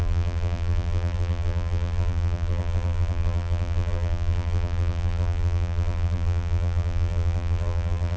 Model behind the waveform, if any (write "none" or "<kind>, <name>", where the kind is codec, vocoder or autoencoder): vocoder, BigVGAN v2